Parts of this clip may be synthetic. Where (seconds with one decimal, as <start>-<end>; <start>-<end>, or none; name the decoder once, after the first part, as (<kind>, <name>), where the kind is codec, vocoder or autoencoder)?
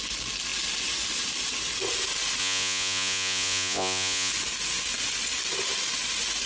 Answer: 2.4-4.3 (vocoder, Vocos)